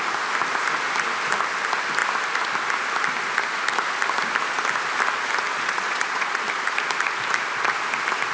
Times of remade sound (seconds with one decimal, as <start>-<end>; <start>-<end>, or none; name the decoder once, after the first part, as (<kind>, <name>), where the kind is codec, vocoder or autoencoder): 5.5-6.4 (vocoder, Vocos)